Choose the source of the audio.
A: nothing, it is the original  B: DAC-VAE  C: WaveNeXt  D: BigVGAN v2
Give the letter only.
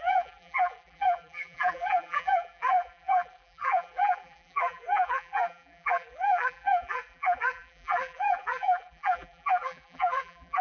D